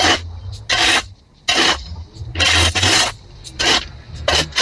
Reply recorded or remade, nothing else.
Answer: recorded